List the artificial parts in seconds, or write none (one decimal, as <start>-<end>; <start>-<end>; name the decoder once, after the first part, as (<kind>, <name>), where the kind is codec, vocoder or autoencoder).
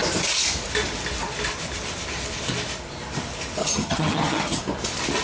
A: 3.6-4.6 (vocoder, HiFi-GAN)